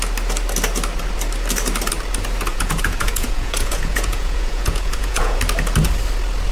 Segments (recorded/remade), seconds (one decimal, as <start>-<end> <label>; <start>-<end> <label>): 0.0-2.5 recorded; 2.5-5.4 remade; 5.4-6.5 recorded